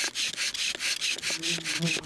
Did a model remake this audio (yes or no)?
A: no